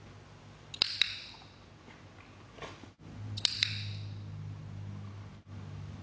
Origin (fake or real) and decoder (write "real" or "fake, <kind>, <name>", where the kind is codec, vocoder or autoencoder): real